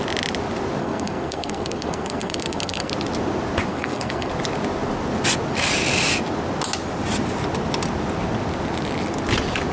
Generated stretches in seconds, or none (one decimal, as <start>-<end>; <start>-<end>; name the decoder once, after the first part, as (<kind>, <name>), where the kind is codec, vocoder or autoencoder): 0.8-2.9 (codec, SNAC); 3.7-4.3